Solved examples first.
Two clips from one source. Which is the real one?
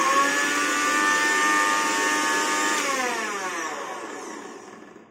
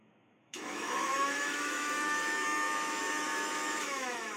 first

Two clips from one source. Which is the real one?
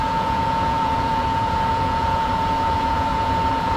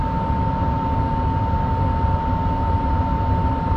second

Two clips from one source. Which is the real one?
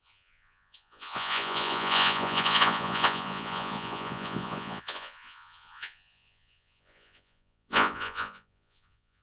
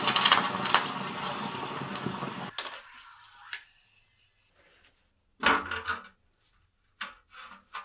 second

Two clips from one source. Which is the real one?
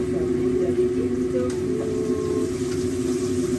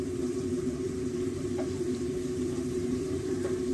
first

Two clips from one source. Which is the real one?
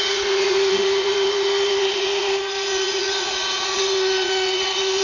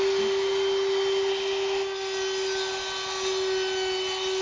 second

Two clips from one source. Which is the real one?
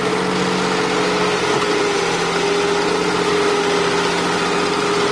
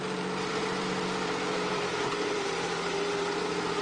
first